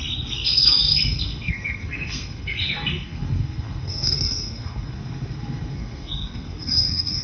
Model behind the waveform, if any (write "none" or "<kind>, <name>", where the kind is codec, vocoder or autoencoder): codec, SNAC